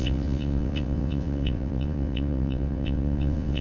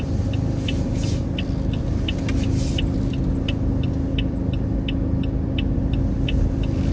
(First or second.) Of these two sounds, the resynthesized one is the first